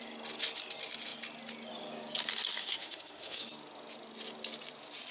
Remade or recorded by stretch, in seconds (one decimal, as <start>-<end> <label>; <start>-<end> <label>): 0.0-2.6 recorded; 2.6-3.5 remade; 3.5-5.1 recorded